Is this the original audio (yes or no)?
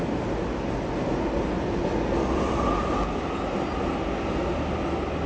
yes